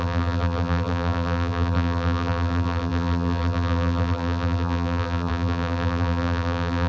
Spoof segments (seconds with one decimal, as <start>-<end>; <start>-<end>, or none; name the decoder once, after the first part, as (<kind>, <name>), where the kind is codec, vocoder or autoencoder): 0.0-6.9 (vocoder, BigVGAN v2)